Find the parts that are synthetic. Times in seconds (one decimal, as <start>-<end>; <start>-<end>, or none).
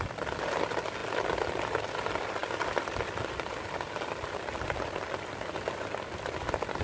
none